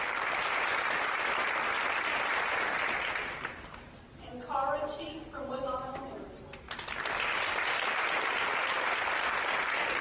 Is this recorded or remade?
recorded